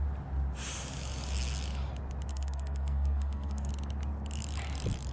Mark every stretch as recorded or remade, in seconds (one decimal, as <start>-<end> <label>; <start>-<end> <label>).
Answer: 0.0-2.3 recorded; 2.3-3.7 remade; 3.7-5.1 recorded